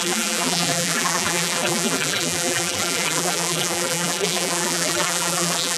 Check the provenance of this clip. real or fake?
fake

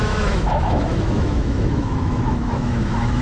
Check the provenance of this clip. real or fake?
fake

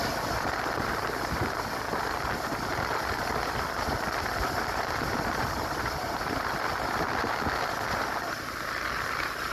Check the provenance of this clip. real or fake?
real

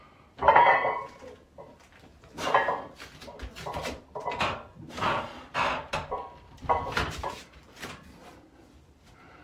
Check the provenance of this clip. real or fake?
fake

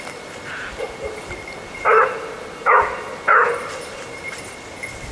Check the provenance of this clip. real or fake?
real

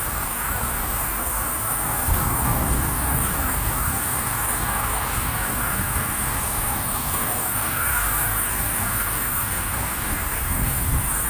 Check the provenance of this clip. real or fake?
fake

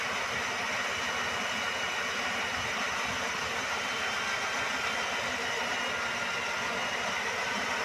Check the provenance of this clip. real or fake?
real